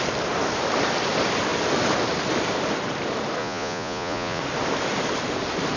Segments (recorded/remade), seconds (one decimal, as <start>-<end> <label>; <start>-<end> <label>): 0.0-3.4 recorded; 3.4-4.4 remade; 4.4-5.8 recorded